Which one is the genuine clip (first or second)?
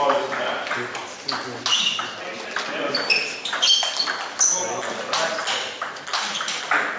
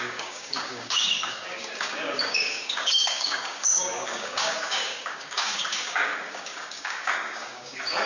first